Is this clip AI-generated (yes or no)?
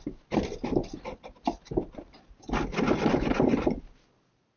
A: no